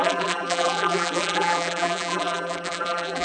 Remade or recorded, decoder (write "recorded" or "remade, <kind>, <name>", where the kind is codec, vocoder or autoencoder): remade, vocoder, BigVGAN v2